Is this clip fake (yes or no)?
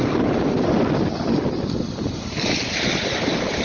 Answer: no